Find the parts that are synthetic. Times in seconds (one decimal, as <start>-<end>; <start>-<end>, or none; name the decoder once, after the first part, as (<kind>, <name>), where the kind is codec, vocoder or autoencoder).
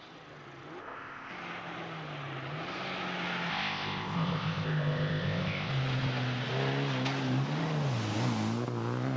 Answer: 0.8-1.3 (codec, ZipCodec); 3.5-5.7